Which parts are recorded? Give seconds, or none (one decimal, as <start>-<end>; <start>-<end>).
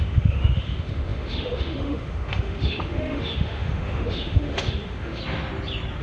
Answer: 5.2-6.0